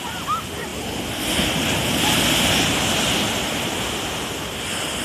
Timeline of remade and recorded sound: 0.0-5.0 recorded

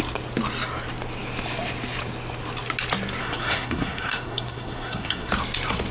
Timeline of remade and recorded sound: 0.0-3.2 recorded; 3.2-5.3 remade; 5.3-5.9 recorded

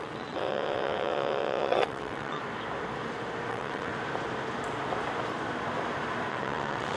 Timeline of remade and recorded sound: 0.0-2.4 remade; 2.4-3.5 recorded; 3.5-3.9 remade; 3.9-6.3 recorded; 6.3-7.0 remade

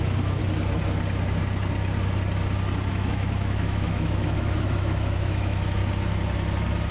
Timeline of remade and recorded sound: 0.0-0.4 remade; 0.4-2.9 recorded; 2.9-5.8 remade; 5.8-6.9 recorded

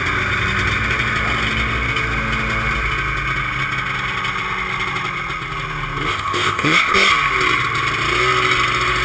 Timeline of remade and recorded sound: 0.0-6.1 recorded; 6.1-7.1 remade; 7.1-9.0 recorded

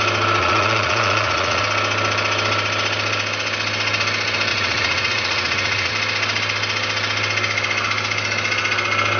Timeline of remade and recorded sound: 0.0-0.4 recorded; 0.4-1.6 remade; 1.6-4.5 recorded; 4.5-5.9 remade; 5.9-9.2 recorded

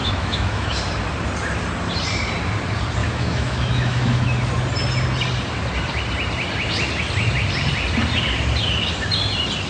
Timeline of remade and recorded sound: 0.0-0.8 remade; 0.8-3.0 recorded; 3.0-4.5 remade; 4.5-9.7 recorded